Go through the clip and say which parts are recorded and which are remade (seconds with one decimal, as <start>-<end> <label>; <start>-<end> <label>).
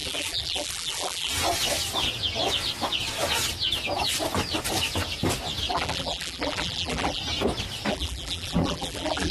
0.0-1.3 remade; 1.3-5.7 recorded; 5.7-7.2 remade; 7.2-7.9 recorded; 7.9-9.3 remade